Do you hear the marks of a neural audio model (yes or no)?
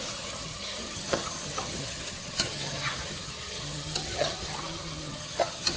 yes